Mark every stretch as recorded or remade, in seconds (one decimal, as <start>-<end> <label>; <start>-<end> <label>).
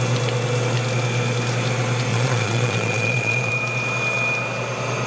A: 0.0-2.1 recorded; 2.1-3.5 remade; 3.5-5.1 recorded